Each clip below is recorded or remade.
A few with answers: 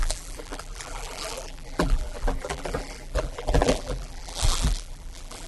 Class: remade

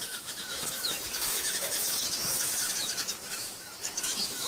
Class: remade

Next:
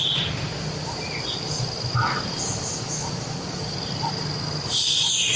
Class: recorded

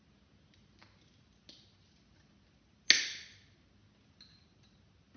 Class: recorded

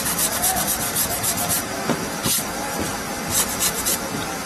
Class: recorded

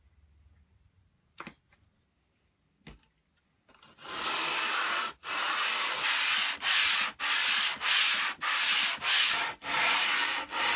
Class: recorded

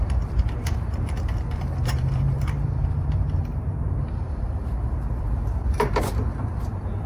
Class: remade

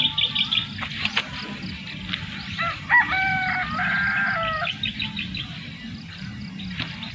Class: recorded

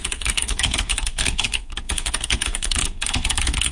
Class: remade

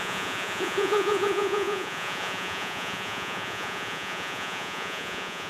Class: remade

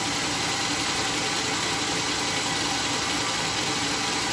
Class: recorded